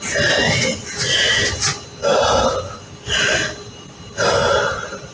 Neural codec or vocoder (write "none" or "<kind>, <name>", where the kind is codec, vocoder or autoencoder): none